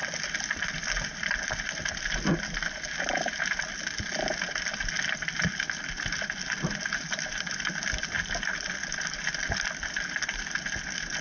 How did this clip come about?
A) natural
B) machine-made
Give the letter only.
A